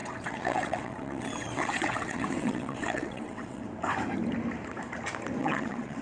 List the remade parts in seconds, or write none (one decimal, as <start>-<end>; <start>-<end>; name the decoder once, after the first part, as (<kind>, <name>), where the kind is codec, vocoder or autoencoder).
0.0-3.6 (vocoder, WaveNeXt); 5.4-6.0